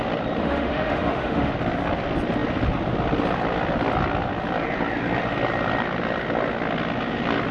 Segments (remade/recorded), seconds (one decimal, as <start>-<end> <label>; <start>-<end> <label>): 0.0-0.4 recorded; 0.4-1.5 remade; 1.5-7.5 recorded